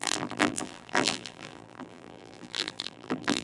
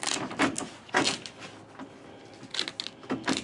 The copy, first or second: first